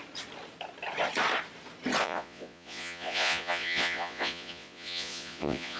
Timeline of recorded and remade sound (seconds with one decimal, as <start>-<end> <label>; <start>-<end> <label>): 0.0-2.0 recorded; 2.0-5.8 remade